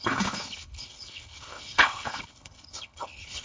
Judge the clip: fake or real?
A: fake